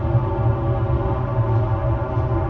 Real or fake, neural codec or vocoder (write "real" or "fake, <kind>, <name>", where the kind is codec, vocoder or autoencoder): real